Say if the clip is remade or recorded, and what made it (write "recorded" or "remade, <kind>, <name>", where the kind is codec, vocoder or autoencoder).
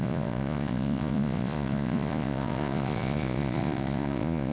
remade, vocoder, Vocos